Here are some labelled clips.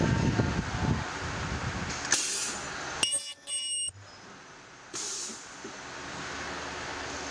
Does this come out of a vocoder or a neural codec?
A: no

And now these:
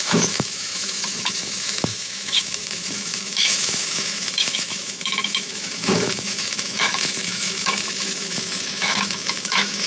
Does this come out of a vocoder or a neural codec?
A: yes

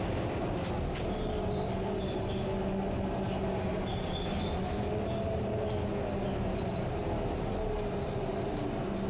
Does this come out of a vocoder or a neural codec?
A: no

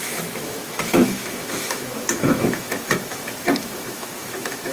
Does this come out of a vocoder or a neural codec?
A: yes